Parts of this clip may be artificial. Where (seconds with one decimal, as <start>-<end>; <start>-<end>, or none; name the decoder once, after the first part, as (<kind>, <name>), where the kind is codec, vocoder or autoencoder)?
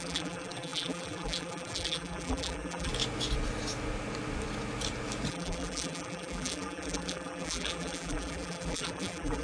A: 0.0-2.9 (vocoder, BigVGAN v2); 5.3-9.4